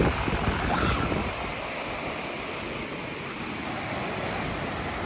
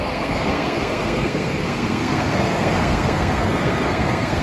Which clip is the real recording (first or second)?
first